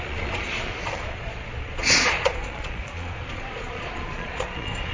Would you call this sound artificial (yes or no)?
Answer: yes